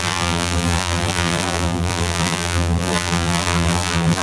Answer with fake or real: fake